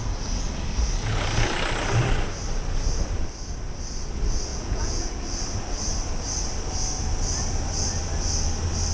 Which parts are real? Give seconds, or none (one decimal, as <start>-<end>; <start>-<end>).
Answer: 0.0-4.5; 5.2-8.9